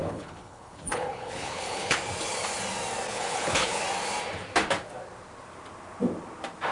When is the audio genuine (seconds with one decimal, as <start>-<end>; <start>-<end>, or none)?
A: 2.0-3.1; 3.8-6.7